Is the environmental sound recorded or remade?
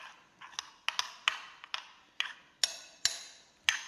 recorded